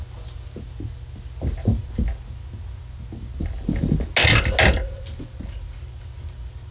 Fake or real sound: real